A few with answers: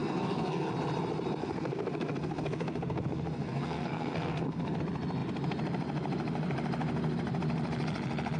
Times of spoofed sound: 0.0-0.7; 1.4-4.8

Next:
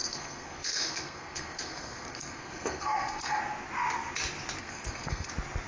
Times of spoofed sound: 0.0-3.4; 4.6-5.3

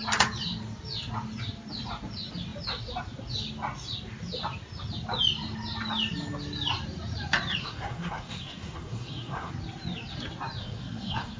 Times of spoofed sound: 7.6-9.5; 10.6-11.4

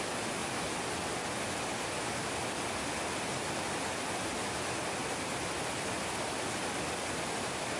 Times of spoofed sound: none

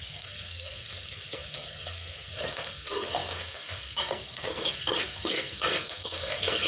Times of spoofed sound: 0.0-6.7

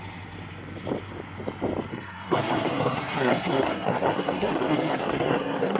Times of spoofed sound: 1.9-5.8

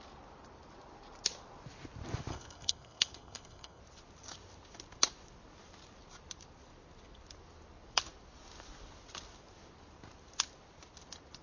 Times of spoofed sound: 2.3-3.8

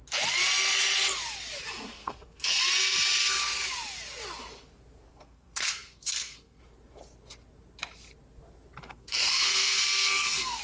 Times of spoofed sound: 2.0-2.6; 5.1-6.6; 8.8-10.6